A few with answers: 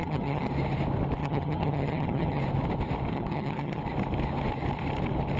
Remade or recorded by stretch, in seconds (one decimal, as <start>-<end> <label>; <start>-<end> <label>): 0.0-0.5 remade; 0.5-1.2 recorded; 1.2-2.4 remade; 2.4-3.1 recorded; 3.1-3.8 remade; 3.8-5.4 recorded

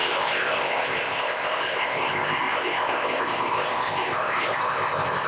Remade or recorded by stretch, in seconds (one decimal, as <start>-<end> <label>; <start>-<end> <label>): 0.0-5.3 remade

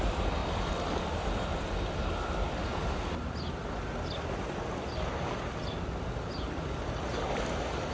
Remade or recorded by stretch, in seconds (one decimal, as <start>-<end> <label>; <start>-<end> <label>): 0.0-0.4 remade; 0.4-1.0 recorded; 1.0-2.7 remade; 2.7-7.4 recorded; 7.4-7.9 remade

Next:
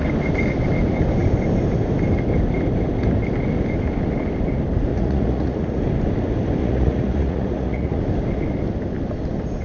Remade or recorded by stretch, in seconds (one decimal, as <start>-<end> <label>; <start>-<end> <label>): 0.0-4.9 recorded; 4.9-5.8 remade; 5.8-6.6 recorded; 6.6-8.0 remade; 8.0-9.6 recorded

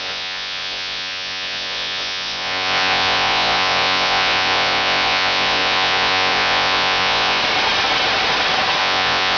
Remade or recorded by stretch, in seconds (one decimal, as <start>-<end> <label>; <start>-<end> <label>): 0.0-7.4 remade; 7.4-8.8 recorded; 8.8-9.4 remade

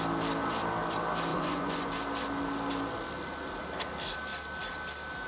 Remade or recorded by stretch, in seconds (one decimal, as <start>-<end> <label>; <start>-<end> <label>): 0.0-1.3 recorded; 1.3-1.9 remade; 1.9-5.3 recorded

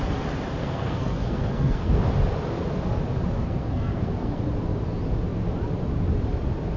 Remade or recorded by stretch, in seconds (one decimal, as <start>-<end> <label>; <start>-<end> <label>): 0.0-0.6 recorded; 0.6-2.0 remade; 2.0-3.4 recorded; 3.4-4.4 remade; 4.4-6.8 recorded

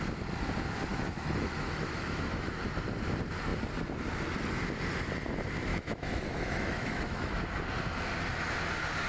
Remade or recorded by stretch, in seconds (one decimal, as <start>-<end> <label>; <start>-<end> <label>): 0.0-0.9 recorded; 0.9-2.5 remade; 2.5-5.7 recorded; 5.7-7.6 remade; 7.6-9.1 recorded